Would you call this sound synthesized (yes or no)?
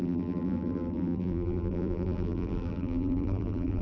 yes